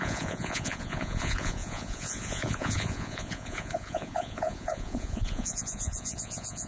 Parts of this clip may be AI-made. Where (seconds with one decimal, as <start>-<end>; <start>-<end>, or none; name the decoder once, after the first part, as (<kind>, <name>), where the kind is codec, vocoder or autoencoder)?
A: 0.0-6.7 (vocoder, Vocos)